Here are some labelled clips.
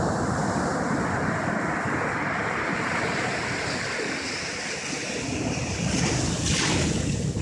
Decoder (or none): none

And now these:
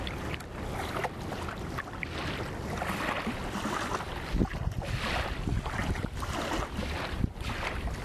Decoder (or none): none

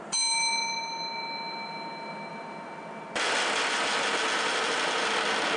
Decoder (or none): none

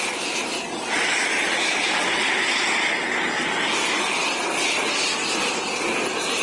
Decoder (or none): none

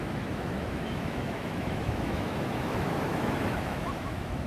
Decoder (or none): autoencoder, DAC-VAE